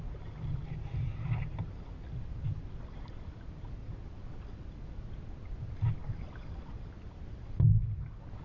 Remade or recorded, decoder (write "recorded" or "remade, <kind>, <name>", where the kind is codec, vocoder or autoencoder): recorded